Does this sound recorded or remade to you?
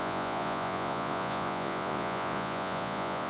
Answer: remade